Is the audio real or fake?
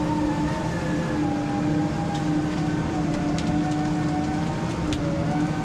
real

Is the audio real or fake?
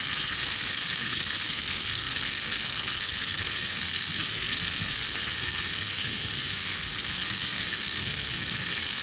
fake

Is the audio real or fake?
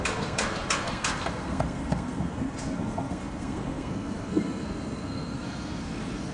fake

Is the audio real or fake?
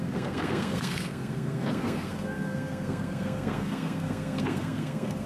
fake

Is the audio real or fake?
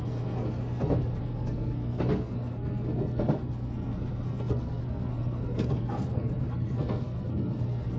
fake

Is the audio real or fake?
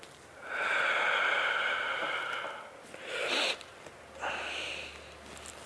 real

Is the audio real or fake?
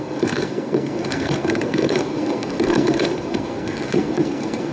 fake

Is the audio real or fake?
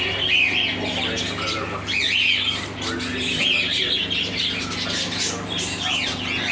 real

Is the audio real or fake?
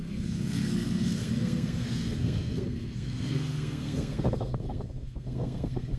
fake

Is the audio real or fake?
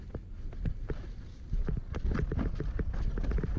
real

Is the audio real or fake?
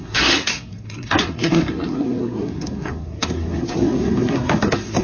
fake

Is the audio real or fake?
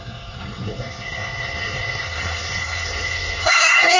fake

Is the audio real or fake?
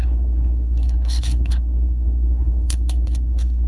fake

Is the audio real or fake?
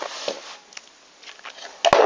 real